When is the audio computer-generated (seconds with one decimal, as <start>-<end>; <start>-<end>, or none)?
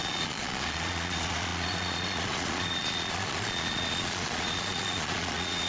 0.0-5.7